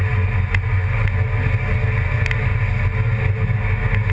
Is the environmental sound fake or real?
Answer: real